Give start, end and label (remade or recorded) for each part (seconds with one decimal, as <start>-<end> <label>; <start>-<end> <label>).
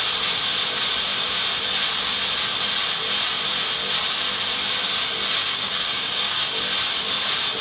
0.0-5.4 recorded; 5.4-6.5 remade; 6.5-7.6 recorded